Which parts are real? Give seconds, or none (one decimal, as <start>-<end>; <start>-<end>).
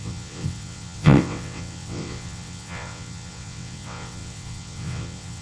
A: none